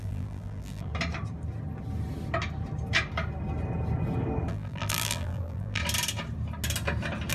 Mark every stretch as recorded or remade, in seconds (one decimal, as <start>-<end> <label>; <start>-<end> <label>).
0.0-0.9 remade; 0.9-4.5 recorded; 4.5-5.8 remade; 5.8-7.3 recorded